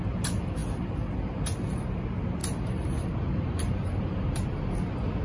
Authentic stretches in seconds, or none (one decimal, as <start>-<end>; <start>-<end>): 0.0-2.4; 4.7-5.2